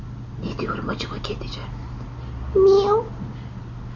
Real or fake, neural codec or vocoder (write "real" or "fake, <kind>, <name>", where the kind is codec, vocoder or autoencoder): real